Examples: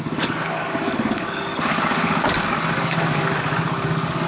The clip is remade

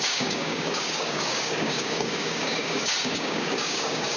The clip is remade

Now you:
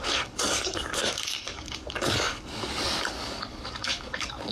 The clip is remade